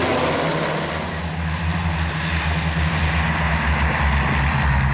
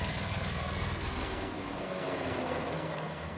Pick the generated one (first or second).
second